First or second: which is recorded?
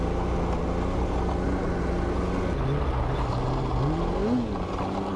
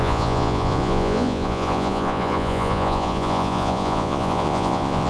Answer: first